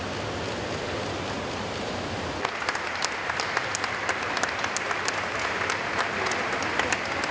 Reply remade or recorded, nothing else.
recorded